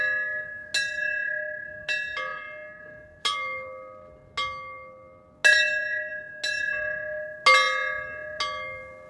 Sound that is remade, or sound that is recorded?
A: recorded